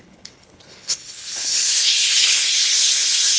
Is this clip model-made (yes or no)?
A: yes